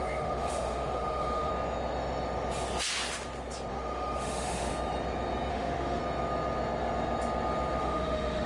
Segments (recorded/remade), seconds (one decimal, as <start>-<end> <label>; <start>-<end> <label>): 0.0-1.5 remade; 1.5-3.7 recorded; 3.7-4.7 remade; 4.7-5.5 recorded; 5.5-6.0 remade; 6.0-7.8 recorded; 7.8-8.5 remade